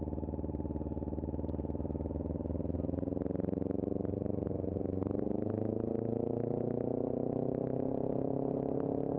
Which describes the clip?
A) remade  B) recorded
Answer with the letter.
B